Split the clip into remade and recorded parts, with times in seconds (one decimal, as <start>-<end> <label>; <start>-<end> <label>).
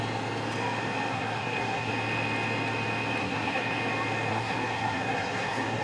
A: 0.0-1.1 recorded; 1.1-1.9 remade; 1.9-3.2 recorded; 3.2-3.7 remade; 3.7-4.3 recorded; 4.3-5.8 remade